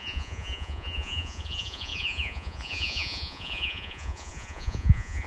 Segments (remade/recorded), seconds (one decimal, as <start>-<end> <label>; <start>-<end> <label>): 0.0-5.3 remade